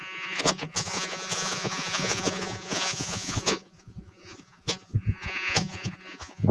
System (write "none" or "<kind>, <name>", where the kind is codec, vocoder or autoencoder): vocoder, Vocos